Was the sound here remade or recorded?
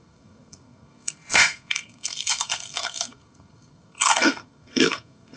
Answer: remade